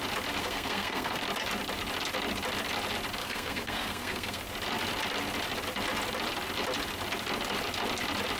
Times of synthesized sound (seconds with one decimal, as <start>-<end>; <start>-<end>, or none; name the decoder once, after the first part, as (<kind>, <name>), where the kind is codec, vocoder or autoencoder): 0.4-1.2 (codec, SNAC); 3.2-4.4